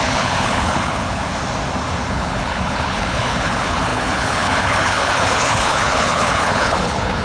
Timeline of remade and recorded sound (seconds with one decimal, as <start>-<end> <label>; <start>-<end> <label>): 0.0-1.2 remade; 1.2-2.1 recorded; 2.1-7.2 remade